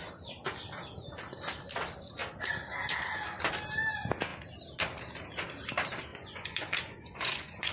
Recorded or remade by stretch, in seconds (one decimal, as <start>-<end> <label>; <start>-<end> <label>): 0.0-6.1 recorded; 6.1-7.7 remade